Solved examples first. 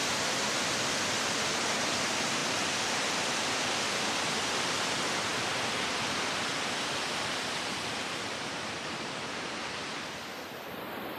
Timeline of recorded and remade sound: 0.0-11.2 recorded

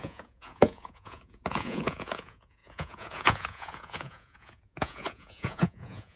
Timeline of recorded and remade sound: 0.0-6.2 remade